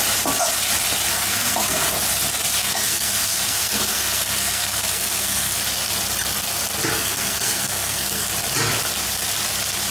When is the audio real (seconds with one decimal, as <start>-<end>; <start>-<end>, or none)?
0.0-1.1; 1.9-2.6; 5.6-6.9; 8.3-9.9